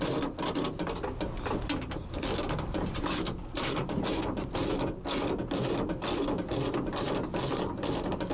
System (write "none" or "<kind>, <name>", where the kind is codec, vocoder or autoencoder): none